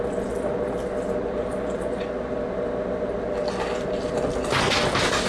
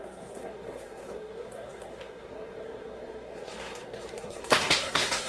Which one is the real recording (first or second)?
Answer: first